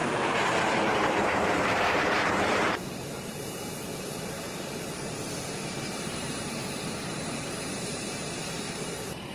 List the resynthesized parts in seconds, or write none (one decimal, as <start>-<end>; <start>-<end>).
0.0-9.3